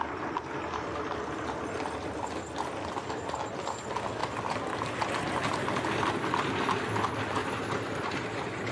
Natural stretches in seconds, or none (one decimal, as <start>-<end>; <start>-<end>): 0.0-7.4